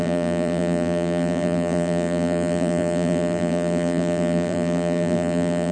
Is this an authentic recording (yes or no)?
no